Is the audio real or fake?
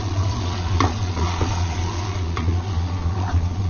fake